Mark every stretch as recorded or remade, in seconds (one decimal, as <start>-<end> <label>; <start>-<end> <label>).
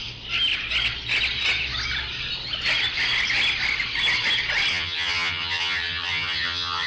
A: 0.0-4.7 recorded; 4.7-6.9 remade